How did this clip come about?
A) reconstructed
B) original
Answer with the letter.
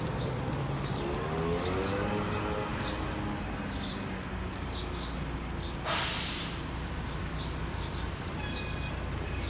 B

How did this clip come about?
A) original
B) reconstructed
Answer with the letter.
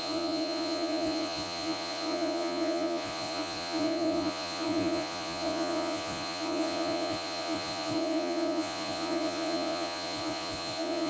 B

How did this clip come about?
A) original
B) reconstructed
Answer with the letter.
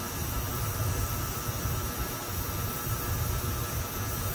B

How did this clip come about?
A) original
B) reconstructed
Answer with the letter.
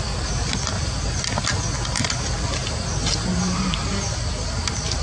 A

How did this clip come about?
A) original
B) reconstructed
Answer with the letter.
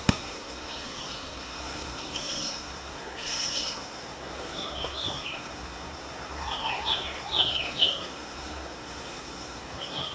B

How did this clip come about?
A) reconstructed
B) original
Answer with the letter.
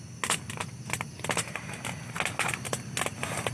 B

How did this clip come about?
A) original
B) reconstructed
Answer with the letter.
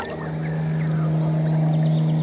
A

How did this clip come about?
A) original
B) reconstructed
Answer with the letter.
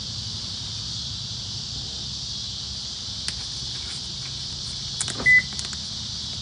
A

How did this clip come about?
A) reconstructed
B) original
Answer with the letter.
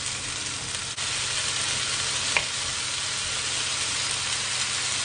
B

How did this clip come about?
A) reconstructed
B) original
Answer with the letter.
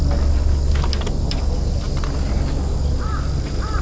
B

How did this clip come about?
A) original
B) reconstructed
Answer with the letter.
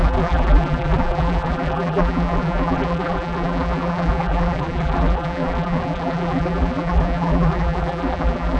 B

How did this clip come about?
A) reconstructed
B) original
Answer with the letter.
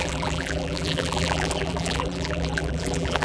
A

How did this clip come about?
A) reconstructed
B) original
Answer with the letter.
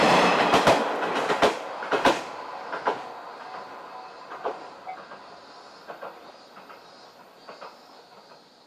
B